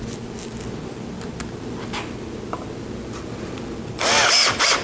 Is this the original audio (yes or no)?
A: yes